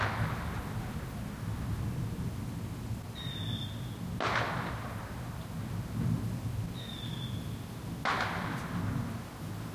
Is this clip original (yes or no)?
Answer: yes